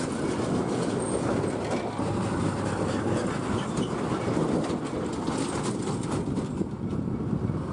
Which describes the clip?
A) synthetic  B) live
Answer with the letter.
B